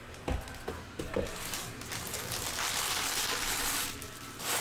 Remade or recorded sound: recorded